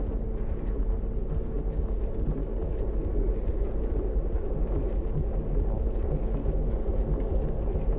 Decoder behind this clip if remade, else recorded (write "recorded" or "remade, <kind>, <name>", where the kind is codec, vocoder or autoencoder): recorded